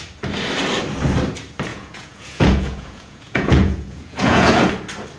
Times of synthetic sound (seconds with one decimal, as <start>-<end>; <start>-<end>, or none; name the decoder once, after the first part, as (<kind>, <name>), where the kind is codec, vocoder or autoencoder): 1.7-4.5 (vocoder, Vocos)